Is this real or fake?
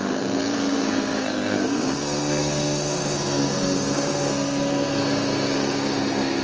fake